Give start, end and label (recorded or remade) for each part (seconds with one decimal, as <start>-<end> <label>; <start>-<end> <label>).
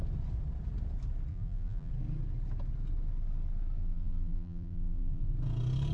0.0-1.3 recorded; 1.3-1.9 remade; 1.9-3.8 recorded; 3.8-5.3 remade; 5.3-5.9 recorded